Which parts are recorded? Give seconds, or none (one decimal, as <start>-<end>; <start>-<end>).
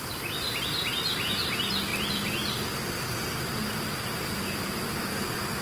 0.0-1.9